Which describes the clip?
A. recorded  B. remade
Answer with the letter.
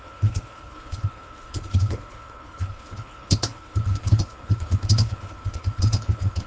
B